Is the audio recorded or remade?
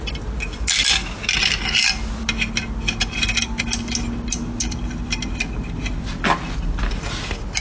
recorded